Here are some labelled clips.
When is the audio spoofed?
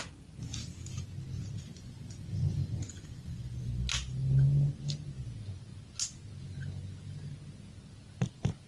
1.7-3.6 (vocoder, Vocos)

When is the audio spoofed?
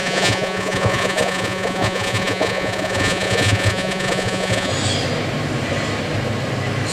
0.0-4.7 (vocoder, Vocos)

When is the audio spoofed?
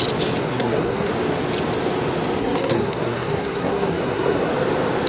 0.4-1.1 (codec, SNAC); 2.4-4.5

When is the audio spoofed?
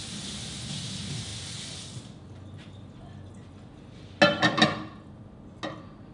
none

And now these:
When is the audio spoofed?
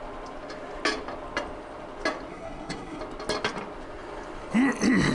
2.3-3.0 (codec, SNAC)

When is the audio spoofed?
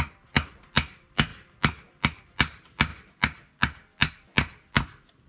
none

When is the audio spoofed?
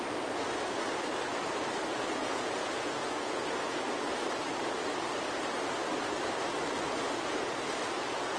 2.2-3.8 (vocoder, Vocos)